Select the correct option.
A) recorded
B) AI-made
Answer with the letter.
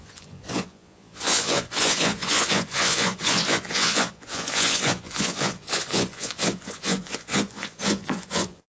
B